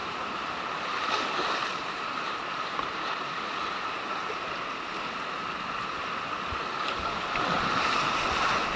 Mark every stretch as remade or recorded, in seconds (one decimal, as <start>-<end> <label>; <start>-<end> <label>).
0.0-0.5 remade; 0.5-1.7 recorded; 1.7-4.7 remade; 4.7-8.8 recorded